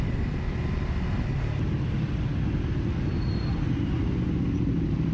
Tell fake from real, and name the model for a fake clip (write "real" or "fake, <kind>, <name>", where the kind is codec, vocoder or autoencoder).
real